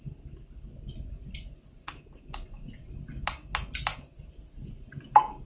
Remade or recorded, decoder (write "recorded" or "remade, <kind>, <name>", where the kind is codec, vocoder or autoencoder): recorded